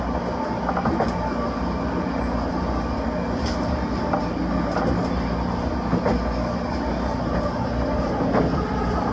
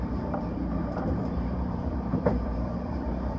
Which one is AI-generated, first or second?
second